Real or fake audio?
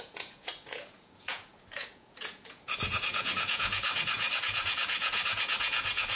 fake